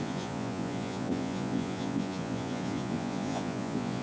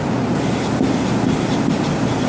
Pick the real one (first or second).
second